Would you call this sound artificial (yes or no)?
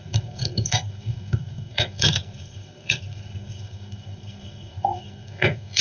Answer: yes